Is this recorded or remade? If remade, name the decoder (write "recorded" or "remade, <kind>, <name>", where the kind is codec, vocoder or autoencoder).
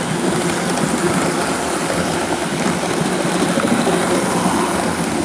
recorded